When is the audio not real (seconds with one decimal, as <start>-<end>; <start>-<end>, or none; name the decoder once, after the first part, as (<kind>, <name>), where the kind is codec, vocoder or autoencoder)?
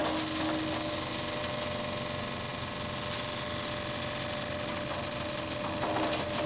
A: none